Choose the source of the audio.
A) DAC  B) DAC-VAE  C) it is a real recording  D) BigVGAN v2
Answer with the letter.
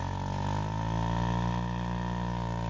C